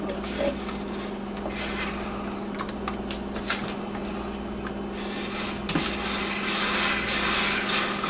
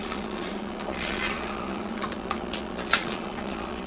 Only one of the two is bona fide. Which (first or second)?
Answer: first